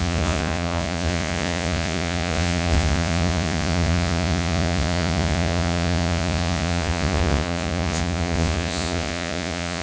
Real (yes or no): no